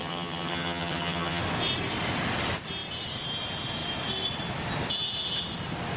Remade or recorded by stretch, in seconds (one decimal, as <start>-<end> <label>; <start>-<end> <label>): 0.0-1.4 remade; 1.4-6.0 recorded